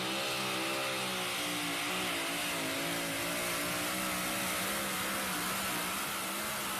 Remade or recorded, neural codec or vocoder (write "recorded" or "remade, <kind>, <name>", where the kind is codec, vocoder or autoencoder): recorded